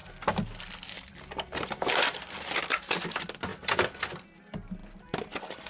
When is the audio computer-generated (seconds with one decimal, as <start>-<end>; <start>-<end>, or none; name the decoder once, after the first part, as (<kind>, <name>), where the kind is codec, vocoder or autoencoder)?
none